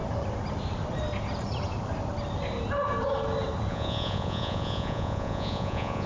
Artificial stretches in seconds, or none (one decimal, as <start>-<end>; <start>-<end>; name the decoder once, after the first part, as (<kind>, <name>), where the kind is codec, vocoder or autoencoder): 3.7-6.1 (vocoder, Vocos)